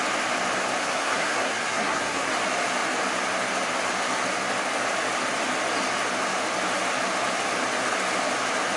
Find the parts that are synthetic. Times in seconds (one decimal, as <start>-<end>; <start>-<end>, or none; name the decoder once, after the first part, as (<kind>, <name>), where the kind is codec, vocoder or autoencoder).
0.8-2.3 (codec, SNAC)